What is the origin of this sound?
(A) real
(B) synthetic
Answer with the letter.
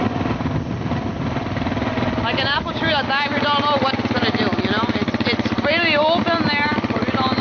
A